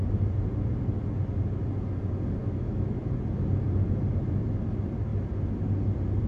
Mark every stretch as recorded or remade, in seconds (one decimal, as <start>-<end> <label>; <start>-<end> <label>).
0.0-2.4 recorded; 2.4-3.0 remade; 3.0-6.3 recorded